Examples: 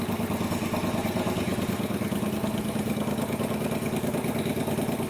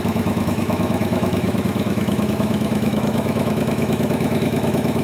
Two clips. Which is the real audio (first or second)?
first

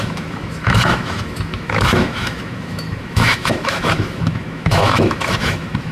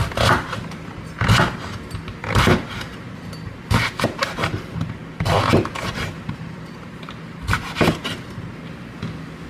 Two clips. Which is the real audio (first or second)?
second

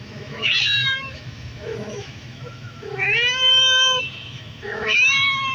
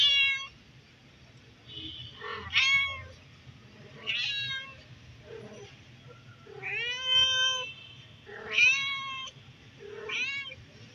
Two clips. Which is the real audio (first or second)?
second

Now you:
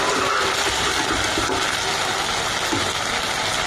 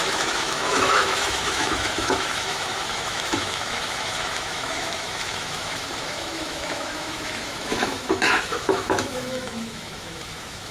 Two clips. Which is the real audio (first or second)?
first